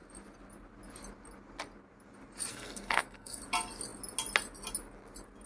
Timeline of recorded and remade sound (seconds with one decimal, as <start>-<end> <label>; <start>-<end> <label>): 0.0-2.5 recorded; 2.5-3.4 remade; 3.4-5.5 recorded